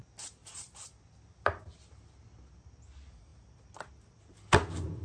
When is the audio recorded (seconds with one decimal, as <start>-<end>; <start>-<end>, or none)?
0.0-5.0

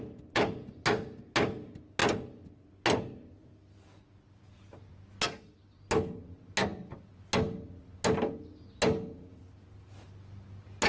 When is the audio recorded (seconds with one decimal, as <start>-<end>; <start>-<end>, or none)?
0.0-10.9

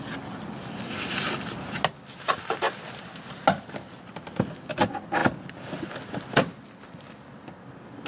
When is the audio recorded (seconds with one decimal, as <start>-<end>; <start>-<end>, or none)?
0.0-8.1

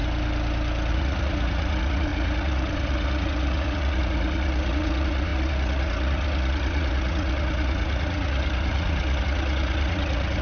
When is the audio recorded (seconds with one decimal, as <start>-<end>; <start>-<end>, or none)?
0.0-0.9

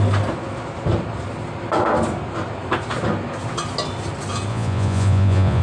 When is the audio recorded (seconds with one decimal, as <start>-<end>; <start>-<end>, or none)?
0.0-4.5

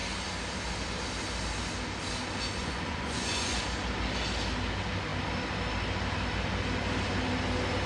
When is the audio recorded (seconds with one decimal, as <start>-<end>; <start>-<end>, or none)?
0.0-2.6; 3.6-7.9